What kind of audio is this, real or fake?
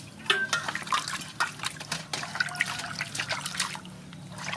real